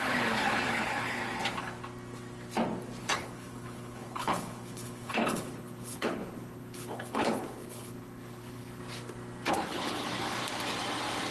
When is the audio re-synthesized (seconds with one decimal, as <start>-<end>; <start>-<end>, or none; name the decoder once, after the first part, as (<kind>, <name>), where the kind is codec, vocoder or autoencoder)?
0.0-1.2 (codec, HILCodec); 3.0-8.8; 9.5-10.4